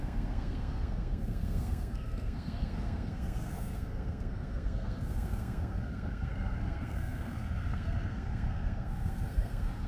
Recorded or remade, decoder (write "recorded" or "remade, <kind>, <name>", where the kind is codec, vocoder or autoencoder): remade, codec, SNAC